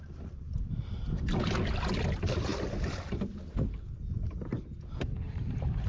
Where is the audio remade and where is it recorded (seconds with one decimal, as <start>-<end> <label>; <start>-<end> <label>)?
0.0-5.9 recorded